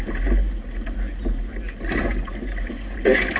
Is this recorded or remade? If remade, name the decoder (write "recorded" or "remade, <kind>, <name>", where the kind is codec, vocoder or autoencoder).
recorded